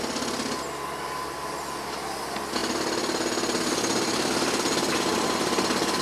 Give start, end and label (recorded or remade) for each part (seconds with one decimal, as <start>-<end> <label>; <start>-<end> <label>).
0.0-6.0 recorded